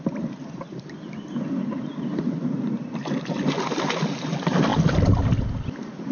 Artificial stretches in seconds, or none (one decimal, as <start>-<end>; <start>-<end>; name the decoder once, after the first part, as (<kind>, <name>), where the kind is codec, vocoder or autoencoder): 0.0-1.9 (vocoder, BigVGAN v2); 4.1-4.7; 5.4-6.1